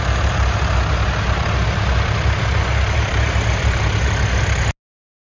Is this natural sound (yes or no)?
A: yes